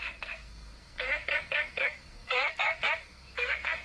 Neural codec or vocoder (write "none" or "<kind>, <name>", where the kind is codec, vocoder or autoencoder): codec, SNAC